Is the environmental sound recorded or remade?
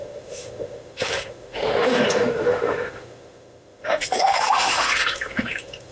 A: remade